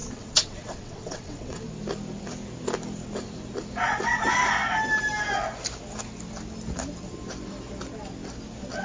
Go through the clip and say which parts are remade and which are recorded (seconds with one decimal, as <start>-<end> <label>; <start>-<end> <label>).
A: 0.0-1.6 remade; 1.6-8.8 recorded